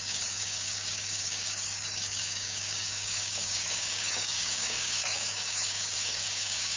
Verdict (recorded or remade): remade